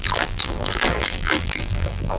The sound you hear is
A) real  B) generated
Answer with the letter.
B